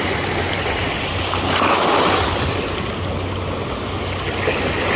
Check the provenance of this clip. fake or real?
real